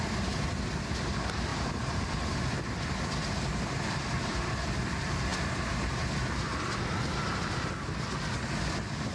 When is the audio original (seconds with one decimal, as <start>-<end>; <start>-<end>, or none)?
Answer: 0.0-9.1